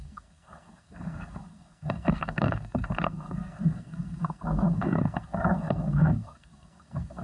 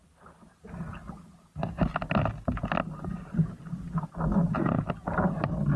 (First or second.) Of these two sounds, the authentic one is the second